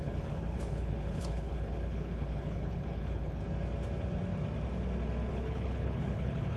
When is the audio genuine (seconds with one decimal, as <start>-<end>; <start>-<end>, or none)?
3.4-5.3